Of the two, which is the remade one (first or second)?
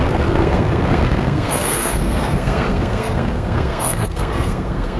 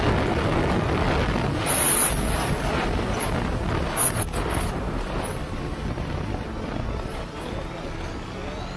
first